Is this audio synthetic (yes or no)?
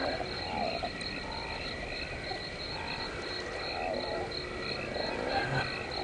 no